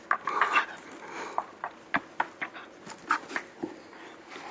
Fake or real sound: real